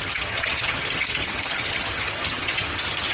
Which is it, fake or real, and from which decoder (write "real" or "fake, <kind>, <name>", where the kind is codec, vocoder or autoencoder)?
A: fake, vocoder, HiFi-GAN